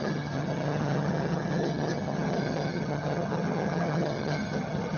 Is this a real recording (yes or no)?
no